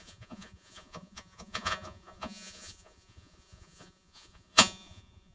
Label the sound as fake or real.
fake